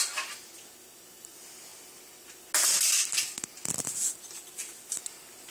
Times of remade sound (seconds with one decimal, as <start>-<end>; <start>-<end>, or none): none